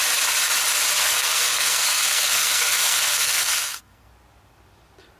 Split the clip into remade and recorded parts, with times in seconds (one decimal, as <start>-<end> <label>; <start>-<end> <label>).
0.0-1.0 recorded; 1.0-4.1 remade; 4.1-5.2 recorded